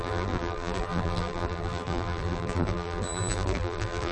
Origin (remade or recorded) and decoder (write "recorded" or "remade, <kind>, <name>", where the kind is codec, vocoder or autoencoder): remade, vocoder, BigVGAN v2